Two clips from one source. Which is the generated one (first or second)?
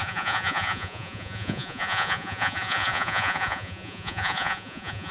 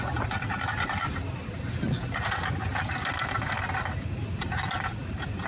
first